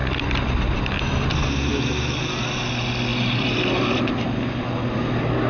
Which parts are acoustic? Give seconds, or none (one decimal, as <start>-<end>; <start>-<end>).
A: 0.0-5.5